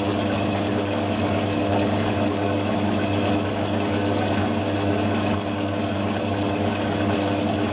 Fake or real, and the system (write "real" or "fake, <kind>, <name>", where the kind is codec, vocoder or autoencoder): fake, codec, DAC